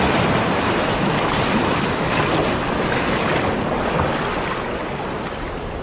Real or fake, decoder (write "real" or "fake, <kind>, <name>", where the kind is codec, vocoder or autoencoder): real